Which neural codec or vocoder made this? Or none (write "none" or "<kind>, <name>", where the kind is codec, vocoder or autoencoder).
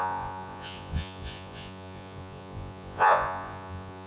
vocoder, Vocos